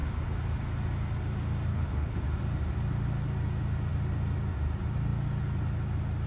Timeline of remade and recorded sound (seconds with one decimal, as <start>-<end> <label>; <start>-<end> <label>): 0.0-1.7 recorded; 1.7-2.2 remade; 2.2-6.3 recorded